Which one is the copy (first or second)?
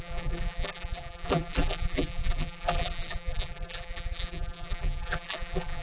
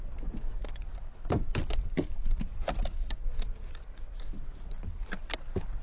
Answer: first